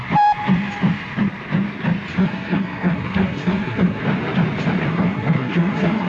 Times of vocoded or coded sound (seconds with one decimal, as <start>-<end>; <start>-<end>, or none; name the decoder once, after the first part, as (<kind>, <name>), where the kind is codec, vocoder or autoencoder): 2.2-4.0 (codec, SNAC); 4.9-6.1